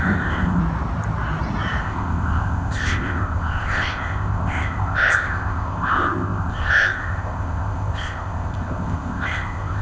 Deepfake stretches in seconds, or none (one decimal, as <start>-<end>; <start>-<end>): 0.0-0.6; 1.8-9.8